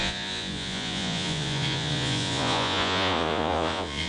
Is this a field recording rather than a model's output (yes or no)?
no